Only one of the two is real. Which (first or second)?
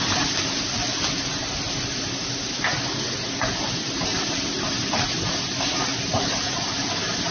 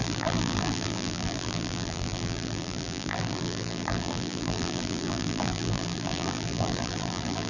first